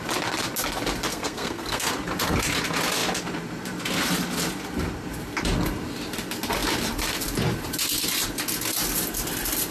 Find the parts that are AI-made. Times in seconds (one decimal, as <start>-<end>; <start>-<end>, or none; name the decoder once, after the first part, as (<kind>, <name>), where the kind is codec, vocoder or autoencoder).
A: 1.1-1.9 (codec, SNAC)